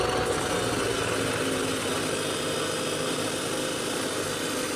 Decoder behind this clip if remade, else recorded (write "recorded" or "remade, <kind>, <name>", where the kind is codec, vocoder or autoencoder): recorded